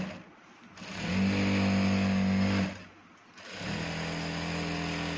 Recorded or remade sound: recorded